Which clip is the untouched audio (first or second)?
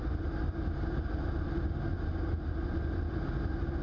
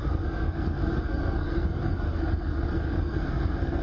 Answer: first